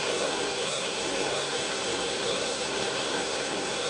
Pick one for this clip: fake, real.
fake